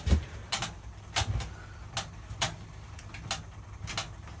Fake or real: real